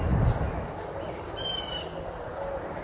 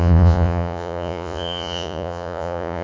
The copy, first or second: second